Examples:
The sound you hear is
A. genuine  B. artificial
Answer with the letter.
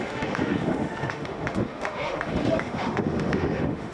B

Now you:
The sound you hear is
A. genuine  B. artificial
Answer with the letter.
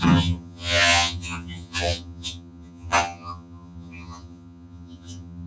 B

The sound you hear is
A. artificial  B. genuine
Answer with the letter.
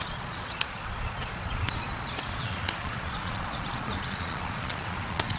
A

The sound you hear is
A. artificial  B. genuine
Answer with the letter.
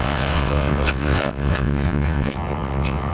A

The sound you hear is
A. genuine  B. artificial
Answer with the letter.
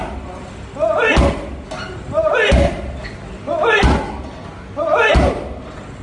A